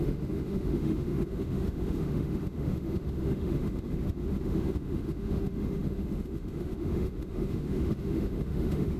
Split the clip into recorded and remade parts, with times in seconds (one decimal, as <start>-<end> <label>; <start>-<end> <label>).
0.0-9.0 remade